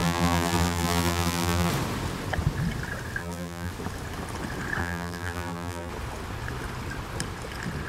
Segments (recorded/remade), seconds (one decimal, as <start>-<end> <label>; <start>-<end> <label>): 0.0-1.7 remade; 1.7-3.2 recorded; 3.2-3.7 remade; 3.7-4.8 recorded; 4.8-5.9 remade; 5.9-7.9 recorded